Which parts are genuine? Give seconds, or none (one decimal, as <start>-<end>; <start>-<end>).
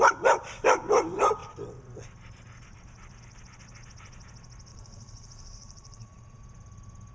0.0-4.7; 6.4-7.1